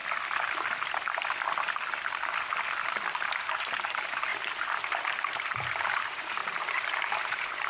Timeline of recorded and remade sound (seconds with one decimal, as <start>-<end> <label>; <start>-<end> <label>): 0.0-3.4 recorded; 3.4-6.4 remade; 6.4-7.2 recorded; 7.2-7.7 remade